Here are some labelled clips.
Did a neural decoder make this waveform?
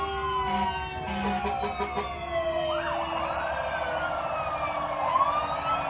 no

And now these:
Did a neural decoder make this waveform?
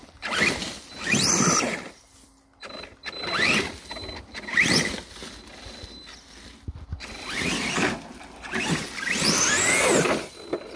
no